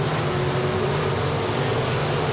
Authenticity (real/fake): real